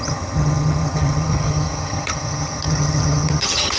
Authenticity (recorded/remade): remade